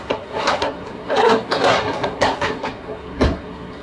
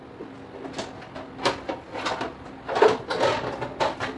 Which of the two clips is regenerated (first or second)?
first